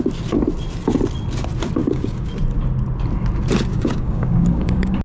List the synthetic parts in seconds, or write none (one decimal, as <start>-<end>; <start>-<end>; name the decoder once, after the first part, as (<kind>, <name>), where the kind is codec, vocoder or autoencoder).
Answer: 1.8-2.3 (codec, DAC); 3.7-5.0